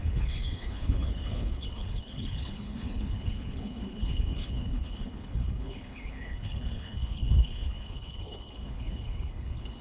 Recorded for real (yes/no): no